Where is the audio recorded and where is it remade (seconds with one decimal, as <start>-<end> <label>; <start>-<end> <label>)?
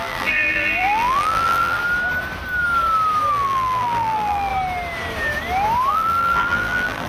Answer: 0.0-1.8 remade; 1.8-3.3 recorded; 3.3-4.5 remade; 4.5-5.9 recorded; 5.9-7.1 remade